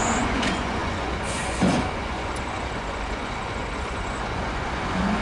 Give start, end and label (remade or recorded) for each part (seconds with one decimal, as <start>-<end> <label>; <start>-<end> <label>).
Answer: 0.0-5.2 remade